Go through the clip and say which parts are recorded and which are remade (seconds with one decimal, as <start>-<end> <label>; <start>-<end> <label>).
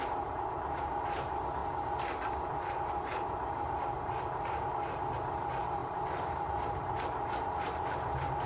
0.0-1.6 remade; 1.6-2.5 recorded; 2.5-8.5 remade